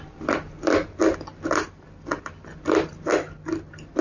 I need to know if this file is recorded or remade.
remade